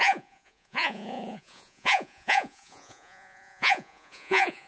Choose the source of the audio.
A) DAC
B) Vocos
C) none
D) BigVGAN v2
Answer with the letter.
B